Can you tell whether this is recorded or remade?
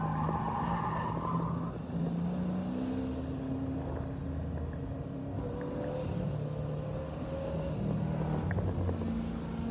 recorded